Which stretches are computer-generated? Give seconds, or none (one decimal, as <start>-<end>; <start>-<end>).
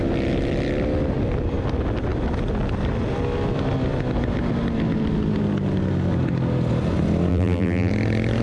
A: 7.3-7.9